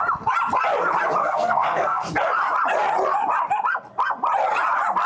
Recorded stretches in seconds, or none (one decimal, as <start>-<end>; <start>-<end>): 0.0-1.2; 2.1-5.1